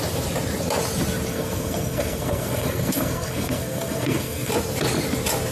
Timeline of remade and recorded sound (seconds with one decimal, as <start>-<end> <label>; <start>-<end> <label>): 0.0-1.3 recorded; 1.3-4.5 remade; 4.5-5.5 recorded